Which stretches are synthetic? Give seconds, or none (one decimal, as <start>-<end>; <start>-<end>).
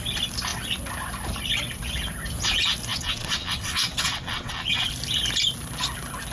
2.9-4.9